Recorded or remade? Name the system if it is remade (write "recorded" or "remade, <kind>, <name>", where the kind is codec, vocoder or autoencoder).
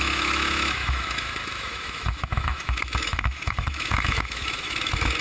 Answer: remade, autoencoder, DAC-VAE